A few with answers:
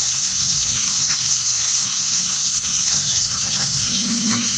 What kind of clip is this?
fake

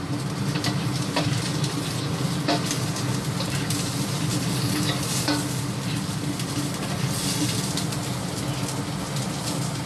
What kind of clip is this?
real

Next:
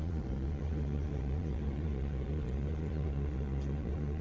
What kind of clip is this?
fake